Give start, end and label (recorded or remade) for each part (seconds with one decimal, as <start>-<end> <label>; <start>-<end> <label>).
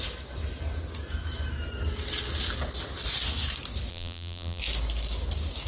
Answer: 0.0-3.9 recorded; 3.9-4.6 remade; 4.6-5.7 recorded